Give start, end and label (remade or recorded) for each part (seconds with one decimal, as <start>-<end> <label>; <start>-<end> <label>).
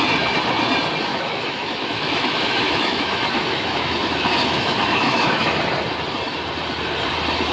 0.0-1.1 recorded; 1.1-5.6 remade; 5.6-7.5 recorded